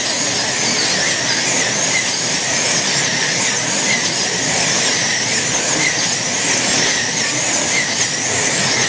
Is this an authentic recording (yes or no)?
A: yes